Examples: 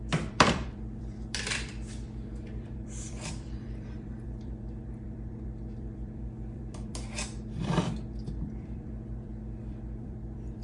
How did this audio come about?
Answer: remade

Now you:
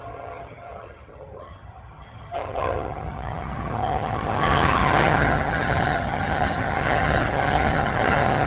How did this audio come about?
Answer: remade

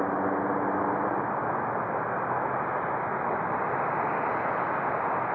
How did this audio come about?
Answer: recorded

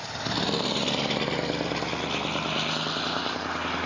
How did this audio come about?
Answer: recorded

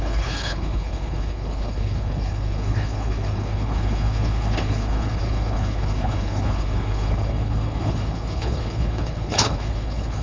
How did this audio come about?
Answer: remade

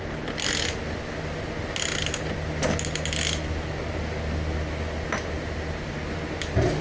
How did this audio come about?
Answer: recorded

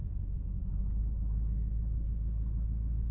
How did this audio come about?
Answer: recorded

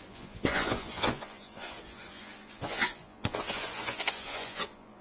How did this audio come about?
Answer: remade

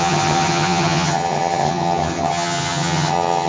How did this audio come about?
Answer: remade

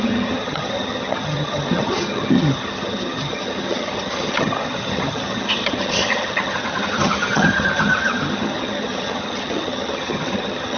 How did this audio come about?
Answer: remade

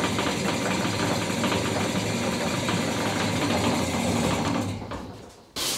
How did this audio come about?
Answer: recorded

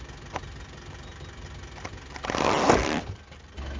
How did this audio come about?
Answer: recorded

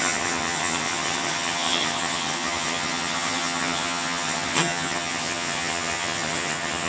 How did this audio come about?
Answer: remade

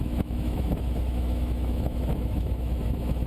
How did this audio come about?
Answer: remade